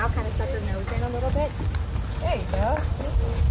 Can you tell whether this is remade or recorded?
recorded